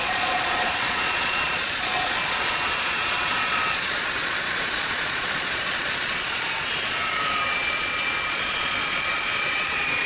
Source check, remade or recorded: remade